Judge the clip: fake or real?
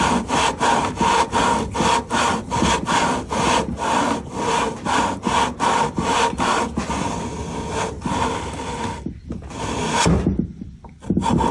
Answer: real